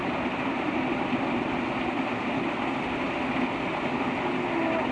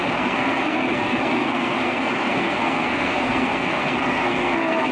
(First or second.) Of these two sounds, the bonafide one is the first